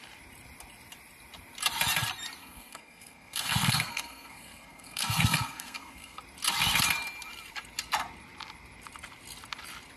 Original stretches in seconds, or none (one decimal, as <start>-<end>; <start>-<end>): 0.0-2.4; 6.2-10.0